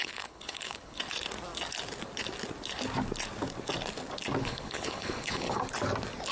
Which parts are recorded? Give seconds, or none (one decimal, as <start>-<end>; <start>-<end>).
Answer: 1.0-4.4; 5.6-6.3

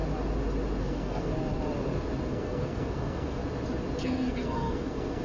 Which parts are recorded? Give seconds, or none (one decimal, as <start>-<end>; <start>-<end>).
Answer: 0.0-0.8; 1.3-2.3; 3.4-4.0

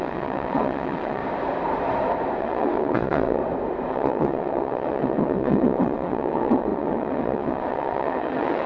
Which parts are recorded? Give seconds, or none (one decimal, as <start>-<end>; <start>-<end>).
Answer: 1.2-2.4; 3.4-3.9

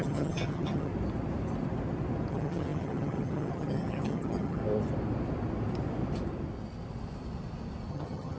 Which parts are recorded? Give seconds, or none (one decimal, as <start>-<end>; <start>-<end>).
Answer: 0.9-2.3; 4.6-7.9